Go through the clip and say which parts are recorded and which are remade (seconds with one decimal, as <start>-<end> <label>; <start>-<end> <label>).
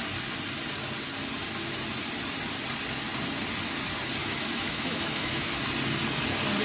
0.0-4.2 recorded; 4.2-5.5 remade; 5.5-6.6 recorded